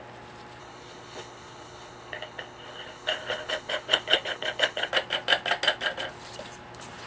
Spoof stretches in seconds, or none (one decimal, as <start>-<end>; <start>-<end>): 0.6-4.9